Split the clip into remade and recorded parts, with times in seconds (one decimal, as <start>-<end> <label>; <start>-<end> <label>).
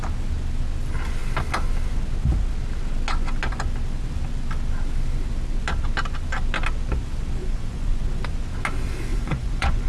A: 0.0-7.4 recorded; 7.4-8.0 remade; 8.0-9.1 recorded; 9.1-9.9 remade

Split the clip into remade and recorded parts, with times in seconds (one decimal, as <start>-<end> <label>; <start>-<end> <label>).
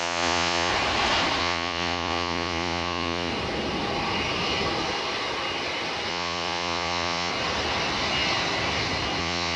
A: 0.0-0.7 remade; 0.7-1.4 recorded; 1.4-3.3 remade; 3.3-6.1 recorded; 6.1-7.3 remade; 7.3-9.2 recorded; 9.2-9.6 remade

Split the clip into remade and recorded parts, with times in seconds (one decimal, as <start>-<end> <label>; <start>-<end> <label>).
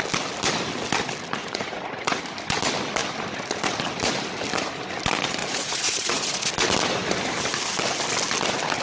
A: 0.0-1.4 recorded; 1.4-2.2 remade; 2.2-5.4 recorded; 5.4-6.5 remade; 6.5-8.8 recorded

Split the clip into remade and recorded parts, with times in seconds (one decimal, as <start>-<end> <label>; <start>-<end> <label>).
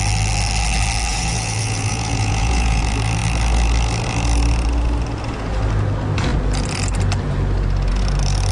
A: 0.0-1.1 recorded; 1.1-2.8 remade; 2.8-8.5 recorded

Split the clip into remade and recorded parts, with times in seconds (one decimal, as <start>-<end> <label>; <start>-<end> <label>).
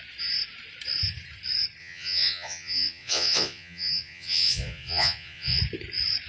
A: 0.0-1.8 recorded; 1.8-5.6 remade; 5.6-6.3 recorded